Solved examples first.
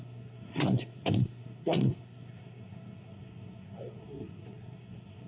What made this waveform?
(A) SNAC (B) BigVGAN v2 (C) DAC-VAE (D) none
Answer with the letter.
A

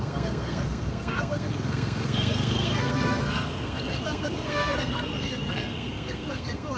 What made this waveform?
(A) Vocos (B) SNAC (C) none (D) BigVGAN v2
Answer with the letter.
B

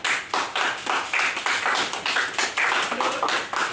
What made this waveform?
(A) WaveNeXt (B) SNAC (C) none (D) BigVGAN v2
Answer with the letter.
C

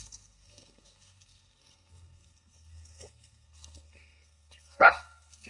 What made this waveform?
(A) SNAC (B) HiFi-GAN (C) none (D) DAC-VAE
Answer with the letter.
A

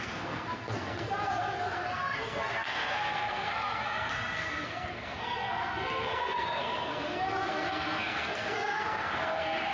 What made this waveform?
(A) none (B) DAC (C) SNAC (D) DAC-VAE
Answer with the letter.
C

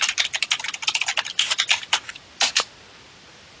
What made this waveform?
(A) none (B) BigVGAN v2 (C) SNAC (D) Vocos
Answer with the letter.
A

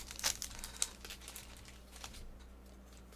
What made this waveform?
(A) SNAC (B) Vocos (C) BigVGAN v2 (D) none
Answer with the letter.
D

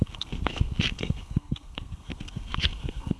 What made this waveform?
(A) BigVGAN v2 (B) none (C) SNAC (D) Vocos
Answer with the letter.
C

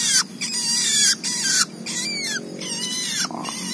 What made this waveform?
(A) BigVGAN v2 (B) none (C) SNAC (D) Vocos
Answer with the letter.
B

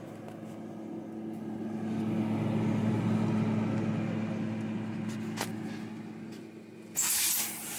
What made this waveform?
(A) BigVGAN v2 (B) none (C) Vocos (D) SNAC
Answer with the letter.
B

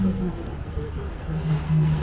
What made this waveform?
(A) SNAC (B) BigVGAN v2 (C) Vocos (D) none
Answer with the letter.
A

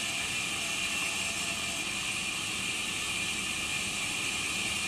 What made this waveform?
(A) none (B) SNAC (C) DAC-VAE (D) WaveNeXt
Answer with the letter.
A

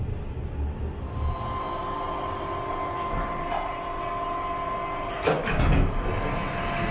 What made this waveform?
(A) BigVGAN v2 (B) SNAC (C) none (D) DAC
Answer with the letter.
C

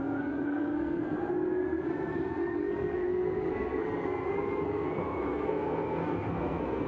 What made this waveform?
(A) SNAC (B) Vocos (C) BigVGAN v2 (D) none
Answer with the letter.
A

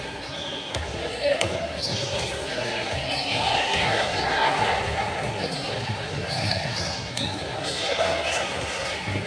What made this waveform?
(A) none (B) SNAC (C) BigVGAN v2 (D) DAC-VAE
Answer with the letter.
B